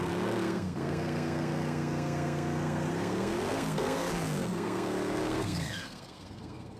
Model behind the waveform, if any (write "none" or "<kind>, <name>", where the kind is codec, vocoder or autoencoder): codec, SNAC